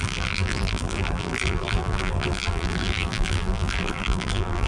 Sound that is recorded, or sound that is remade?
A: remade